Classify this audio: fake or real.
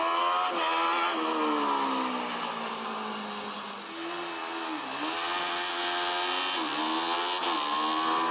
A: real